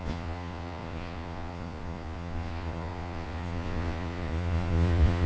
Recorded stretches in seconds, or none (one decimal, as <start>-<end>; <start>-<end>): none